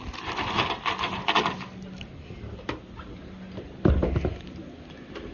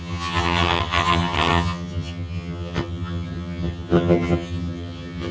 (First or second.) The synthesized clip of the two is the second